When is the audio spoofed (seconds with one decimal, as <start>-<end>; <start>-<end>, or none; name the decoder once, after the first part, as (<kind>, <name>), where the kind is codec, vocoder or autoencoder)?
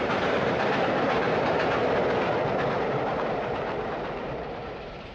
0.0-1.8 (vocoder, BigVGAN v2); 2.8-5.1